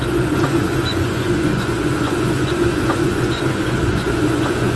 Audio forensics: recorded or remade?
remade